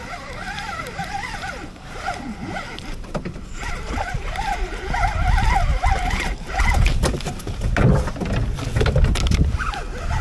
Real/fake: real